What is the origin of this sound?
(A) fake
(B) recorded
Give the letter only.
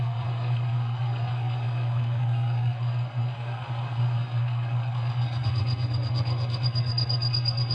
A